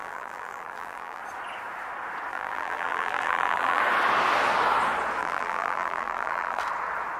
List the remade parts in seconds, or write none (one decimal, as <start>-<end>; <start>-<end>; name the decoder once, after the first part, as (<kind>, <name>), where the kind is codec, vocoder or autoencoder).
0.0-1.2 (vocoder, BigVGAN v2); 2.3-3.8; 5.2-6.6